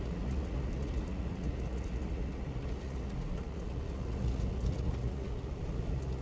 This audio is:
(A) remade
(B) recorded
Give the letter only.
A